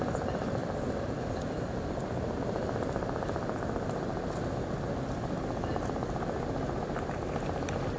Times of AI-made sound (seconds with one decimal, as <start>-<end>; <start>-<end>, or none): none